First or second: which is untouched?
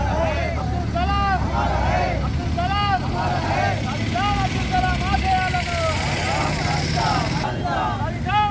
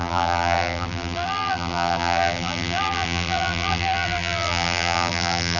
first